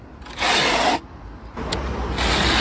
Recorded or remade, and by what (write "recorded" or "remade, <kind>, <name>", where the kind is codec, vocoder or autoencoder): recorded